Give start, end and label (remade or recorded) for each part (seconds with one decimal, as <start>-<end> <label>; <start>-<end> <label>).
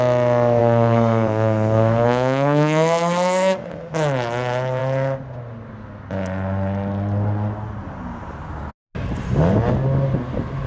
0.0-0.6 recorded; 0.6-3.6 remade; 3.6-10.7 recorded